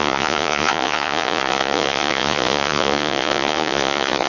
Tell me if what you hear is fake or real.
fake